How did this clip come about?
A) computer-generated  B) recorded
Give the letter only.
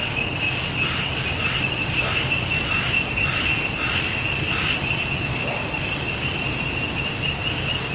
B